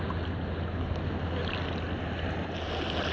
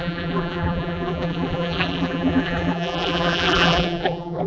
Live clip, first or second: first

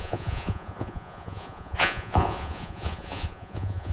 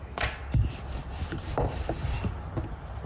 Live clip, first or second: second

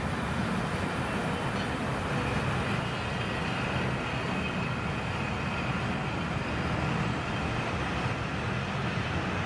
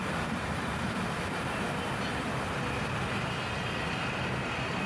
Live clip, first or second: first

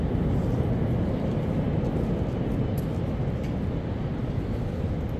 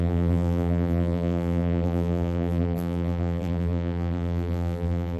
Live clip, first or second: first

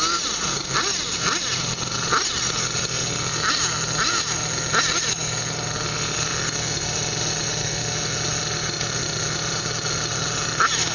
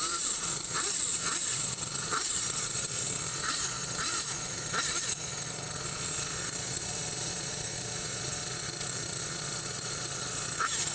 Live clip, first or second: first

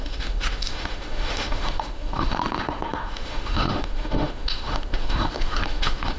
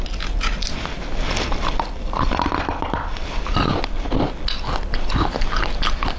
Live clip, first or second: second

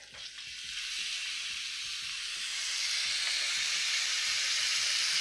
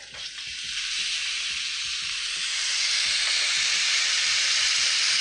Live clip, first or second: first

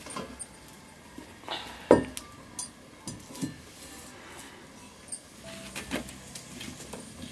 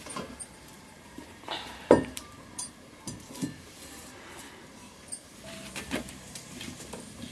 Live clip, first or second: first